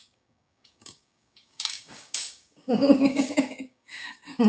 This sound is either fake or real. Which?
fake